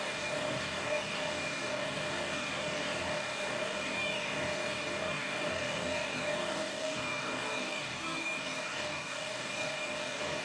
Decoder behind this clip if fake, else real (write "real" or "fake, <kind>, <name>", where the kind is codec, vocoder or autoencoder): fake, codec, DAC